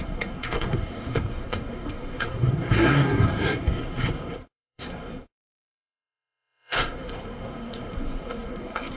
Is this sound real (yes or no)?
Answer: no